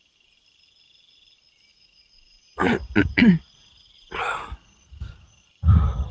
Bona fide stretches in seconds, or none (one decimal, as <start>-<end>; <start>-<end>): 0.0-1.7; 5.4-6.1